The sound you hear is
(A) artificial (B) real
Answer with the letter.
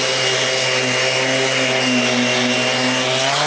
B